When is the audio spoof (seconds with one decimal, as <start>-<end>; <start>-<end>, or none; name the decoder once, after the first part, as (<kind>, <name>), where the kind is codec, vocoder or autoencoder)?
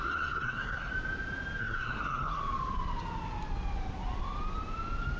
0.0-0.9 (codec, SNAC); 1.6-2.4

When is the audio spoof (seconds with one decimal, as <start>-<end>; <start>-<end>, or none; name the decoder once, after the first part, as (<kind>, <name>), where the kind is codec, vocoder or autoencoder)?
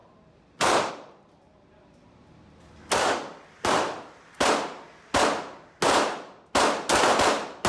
0.0-0.9 (vocoder, BigVGAN v2)